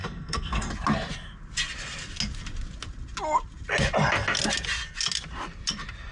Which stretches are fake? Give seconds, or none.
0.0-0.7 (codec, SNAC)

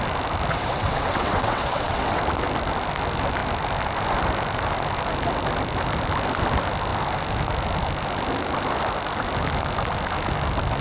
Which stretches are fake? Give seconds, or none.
0.5-2.2 (vocoder, WaveNeXt)

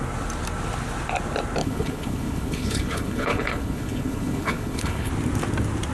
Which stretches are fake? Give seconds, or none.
1.6-5.1 (codec, HILCodec)

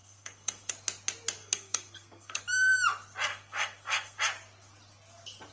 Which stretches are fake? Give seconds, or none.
0.0-0.7 (codec, SNAC); 1.4-2.4; 3.3-4.2

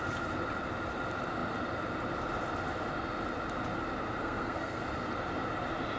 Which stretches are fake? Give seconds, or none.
4.2-4.8 (codec, SNAC)

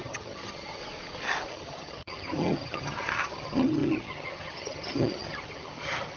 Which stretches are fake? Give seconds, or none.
0.0-0.8 (vocoder, HiFi-GAN); 1.5-6.2

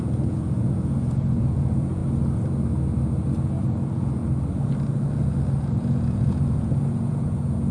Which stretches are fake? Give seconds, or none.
0.0-2.0 (vocoder, Vocos); 3.6-4.2; 5.6-7.7